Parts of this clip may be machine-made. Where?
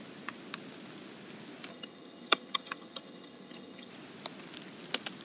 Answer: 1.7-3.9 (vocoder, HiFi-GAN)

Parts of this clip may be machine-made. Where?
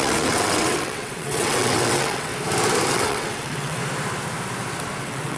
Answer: 0.0-2.3 (vocoder, WaveNeXt); 2.9-3.8; 5.0-5.4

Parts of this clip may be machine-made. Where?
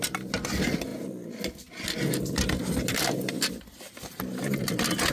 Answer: none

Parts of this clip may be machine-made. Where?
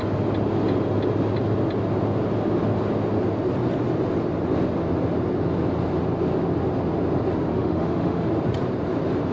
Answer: 7.5-8.3 (autoencoder, DAC-VAE)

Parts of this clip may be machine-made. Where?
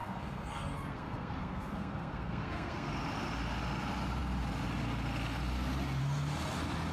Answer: 0.0-2.9 (codec, SNAC)